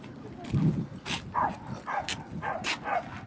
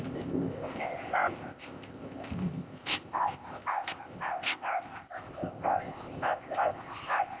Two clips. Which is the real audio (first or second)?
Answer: first